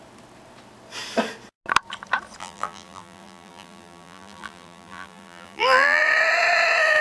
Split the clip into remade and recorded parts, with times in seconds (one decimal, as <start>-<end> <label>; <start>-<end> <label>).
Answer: 0.0-2.4 recorded; 2.4-6.0 remade; 6.0-7.0 recorded